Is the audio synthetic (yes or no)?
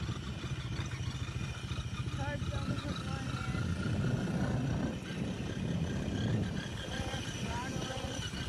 no